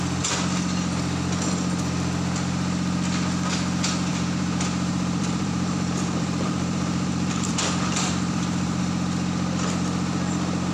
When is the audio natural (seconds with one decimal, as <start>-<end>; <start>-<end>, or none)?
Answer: 0.0-4.1; 8.8-10.7